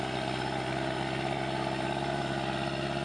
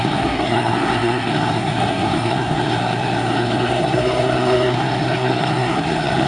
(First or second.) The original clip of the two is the first